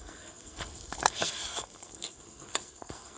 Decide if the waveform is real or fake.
fake